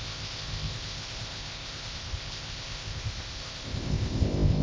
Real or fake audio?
fake